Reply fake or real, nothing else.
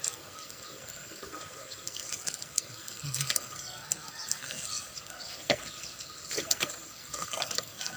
fake